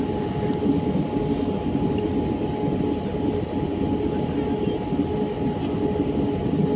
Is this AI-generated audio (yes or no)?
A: no